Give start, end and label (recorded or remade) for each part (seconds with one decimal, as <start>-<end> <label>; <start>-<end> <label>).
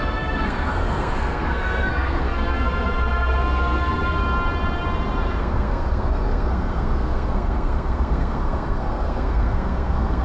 0.0-4.2 remade; 4.2-5.4 recorded; 5.4-10.2 remade